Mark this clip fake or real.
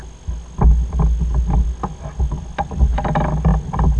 real